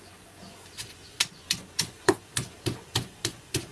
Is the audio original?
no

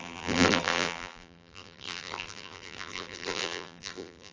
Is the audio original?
no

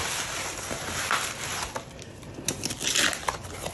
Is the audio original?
yes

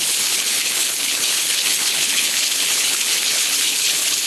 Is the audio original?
no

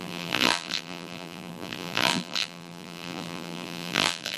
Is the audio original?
no